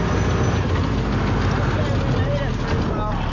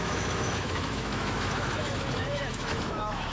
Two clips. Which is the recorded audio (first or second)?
first